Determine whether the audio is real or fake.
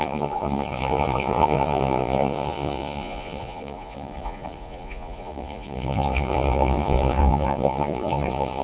fake